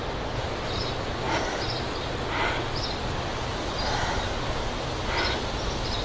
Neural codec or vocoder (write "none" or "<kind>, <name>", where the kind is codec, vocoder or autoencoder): none